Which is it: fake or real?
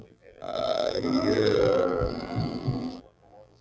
fake